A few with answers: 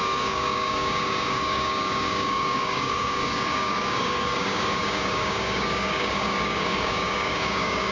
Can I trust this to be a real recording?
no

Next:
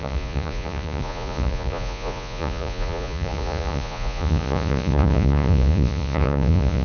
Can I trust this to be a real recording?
no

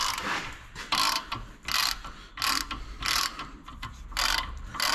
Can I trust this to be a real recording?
yes